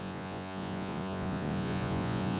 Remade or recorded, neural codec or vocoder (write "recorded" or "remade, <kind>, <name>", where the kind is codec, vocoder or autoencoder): remade, vocoder, Vocos